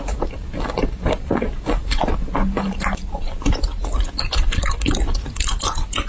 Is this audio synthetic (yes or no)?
no